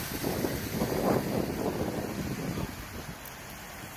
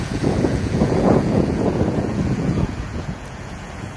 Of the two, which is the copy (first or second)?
second